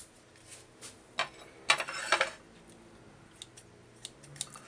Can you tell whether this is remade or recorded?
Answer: recorded